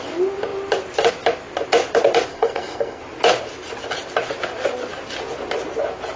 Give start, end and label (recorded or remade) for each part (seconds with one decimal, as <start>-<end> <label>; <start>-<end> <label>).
0.0-2.3 recorded; 2.3-3.0 remade; 3.0-6.2 recorded